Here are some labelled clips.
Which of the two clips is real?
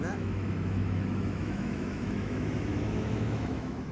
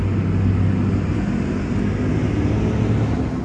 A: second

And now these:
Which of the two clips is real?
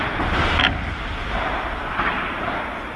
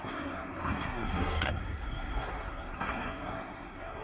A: first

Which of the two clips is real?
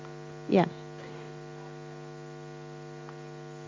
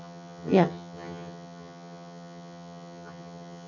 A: first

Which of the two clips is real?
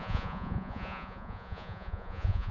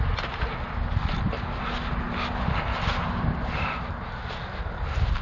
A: second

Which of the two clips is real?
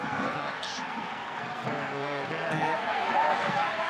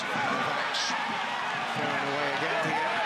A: second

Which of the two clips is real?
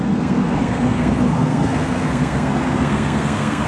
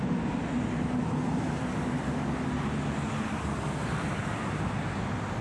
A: second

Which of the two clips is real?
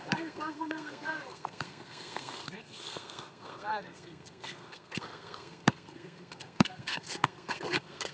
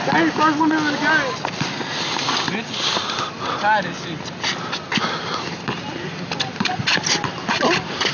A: second